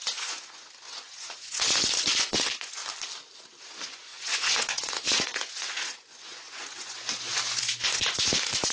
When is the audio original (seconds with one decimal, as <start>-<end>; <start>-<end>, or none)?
2.8-3.6